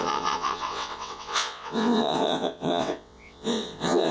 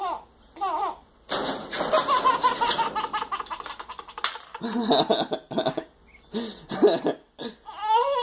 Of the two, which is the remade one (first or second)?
first